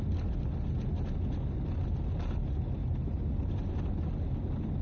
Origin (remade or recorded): recorded